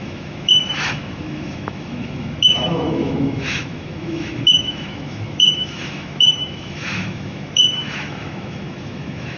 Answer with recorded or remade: remade